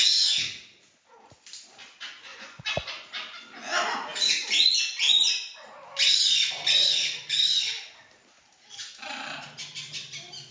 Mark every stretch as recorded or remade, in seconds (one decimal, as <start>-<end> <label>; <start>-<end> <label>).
0.0-2.3 recorded; 2.3-2.9 remade; 2.9-10.5 recorded